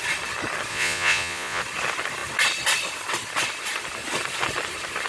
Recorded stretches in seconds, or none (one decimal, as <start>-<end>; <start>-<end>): 0.0-0.7; 1.6-5.1